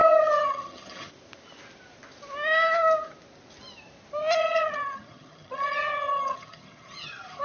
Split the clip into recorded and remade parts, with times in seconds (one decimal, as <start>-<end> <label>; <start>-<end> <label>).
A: 0.0-1.1 remade; 1.1-4.4 recorded; 4.4-7.4 remade